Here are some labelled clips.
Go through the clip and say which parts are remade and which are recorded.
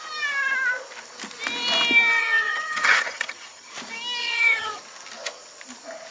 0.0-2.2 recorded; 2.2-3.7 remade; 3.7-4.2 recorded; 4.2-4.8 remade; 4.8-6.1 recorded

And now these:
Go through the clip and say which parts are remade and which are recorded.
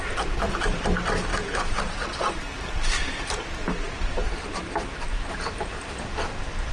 0.0-1.3 recorded; 1.3-5.3 remade; 5.3-6.7 recorded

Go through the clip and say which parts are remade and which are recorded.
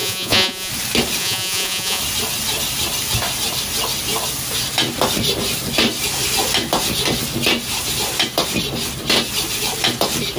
0.0-0.7 remade; 0.7-1.2 recorded; 1.2-2.0 remade; 2.0-10.4 recorded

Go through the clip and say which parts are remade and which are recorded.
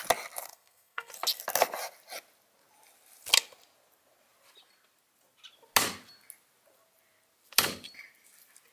0.0-0.5 recorded; 0.5-1.1 remade; 1.1-8.7 recorded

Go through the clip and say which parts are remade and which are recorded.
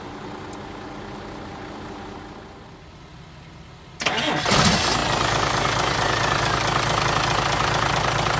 0.0-8.4 recorded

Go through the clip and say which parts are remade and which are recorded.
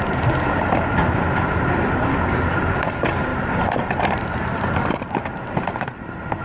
0.0-6.4 remade